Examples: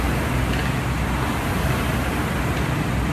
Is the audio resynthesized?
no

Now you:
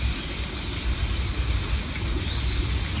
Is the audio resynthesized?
no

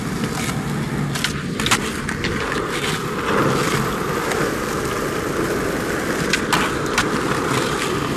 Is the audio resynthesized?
no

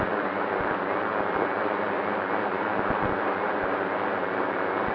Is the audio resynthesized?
no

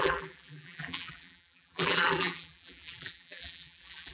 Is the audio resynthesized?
yes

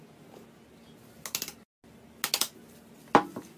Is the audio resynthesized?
no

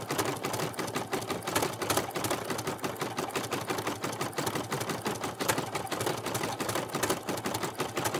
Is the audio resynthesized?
no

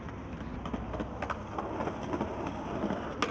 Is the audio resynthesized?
no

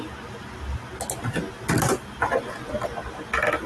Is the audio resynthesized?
no